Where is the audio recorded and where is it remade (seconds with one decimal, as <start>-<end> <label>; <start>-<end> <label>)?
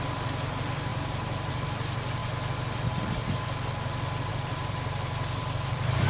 0.0-0.9 remade; 0.9-1.5 recorded; 1.5-2.2 remade; 2.2-4.3 recorded; 4.3-6.1 remade